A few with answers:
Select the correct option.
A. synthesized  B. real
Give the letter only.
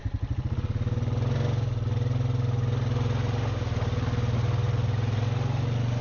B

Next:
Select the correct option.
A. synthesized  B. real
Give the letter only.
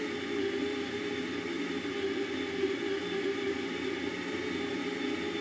B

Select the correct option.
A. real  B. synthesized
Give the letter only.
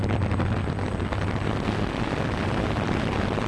A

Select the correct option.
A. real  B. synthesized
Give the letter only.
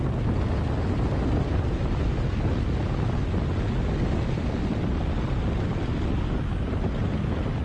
A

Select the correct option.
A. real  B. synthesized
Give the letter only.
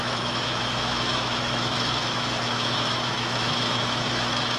B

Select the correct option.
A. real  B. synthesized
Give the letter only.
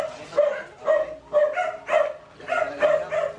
A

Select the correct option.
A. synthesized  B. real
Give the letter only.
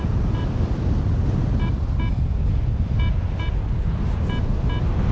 B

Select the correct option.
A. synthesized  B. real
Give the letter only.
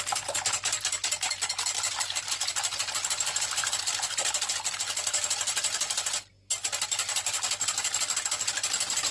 B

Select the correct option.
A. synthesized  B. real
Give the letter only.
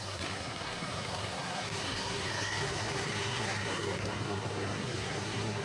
A